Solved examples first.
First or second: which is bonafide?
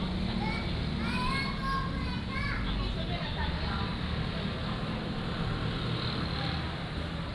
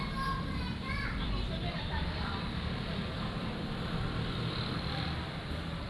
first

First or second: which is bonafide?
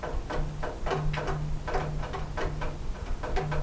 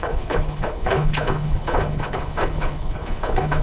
first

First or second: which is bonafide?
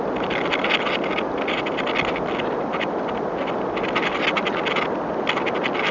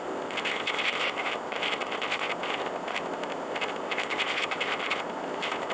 first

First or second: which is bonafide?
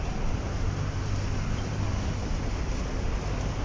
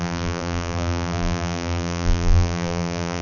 first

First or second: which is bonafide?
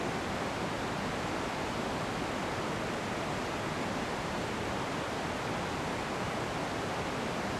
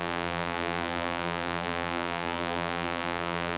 first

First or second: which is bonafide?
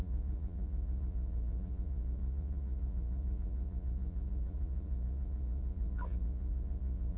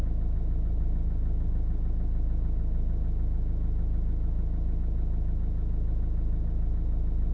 second